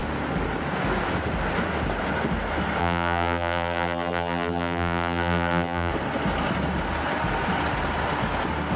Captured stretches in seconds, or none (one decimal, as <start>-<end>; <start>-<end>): 0.0-2.8; 5.9-8.8